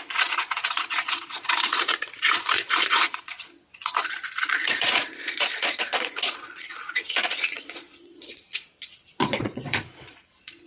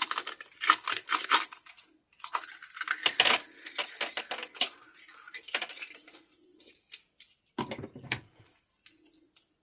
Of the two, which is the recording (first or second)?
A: second